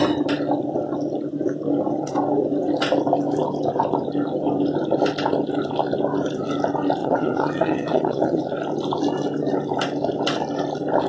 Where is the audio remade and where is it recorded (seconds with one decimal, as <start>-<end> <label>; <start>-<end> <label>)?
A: 0.0-7.0 recorded; 7.0-8.4 remade; 8.4-11.1 recorded

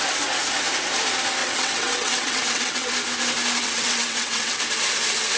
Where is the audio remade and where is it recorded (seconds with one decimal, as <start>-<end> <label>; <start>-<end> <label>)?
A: 0.0-1.4 recorded; 1.4-2.9 remade; 2.9-3.6 recorded; 3.6-4.6 remade; 4.6-5.4 recorded

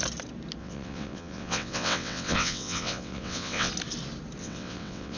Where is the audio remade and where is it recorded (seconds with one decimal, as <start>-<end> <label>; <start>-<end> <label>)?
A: 0.0-0.6 recorded; 0.6-3.7 remade; 3.7-4.4 recorded; 4.4-5.2 remade

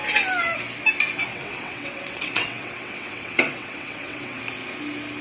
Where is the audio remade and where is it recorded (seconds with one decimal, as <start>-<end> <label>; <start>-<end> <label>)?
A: 0.0-1.3 recorded; 1.3-4.4 remade; 4.4-5.2 recorded

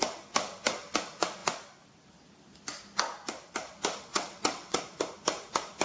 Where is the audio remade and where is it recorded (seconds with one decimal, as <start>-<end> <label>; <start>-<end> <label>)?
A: 0.0-4.1 recorded; 4.1-4.8 remade; 4.8-5.8 recorded

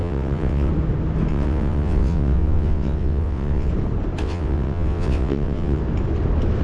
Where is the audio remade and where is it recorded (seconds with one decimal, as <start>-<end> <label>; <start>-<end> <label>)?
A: 0.0-0.7 remade; 0.7-1.3 recorded; 1.3-3.7 remade; 3.7-4.2 recorded; 4.2-5.8 remade; 5.8-6.6 recorded

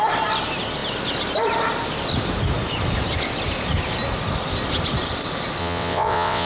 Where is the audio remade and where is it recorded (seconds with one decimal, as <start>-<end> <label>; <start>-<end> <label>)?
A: 0.0-5.6 recorded; 5.6-6.5 remade

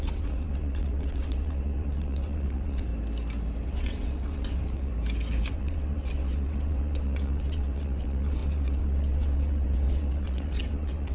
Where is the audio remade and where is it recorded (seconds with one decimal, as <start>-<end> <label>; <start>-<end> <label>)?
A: 0.0-2.9 remade; 2.9-3.7 recorded; 3.7-4.9 remade; 4.9-5.5 recorded; 5.5-11.1 remade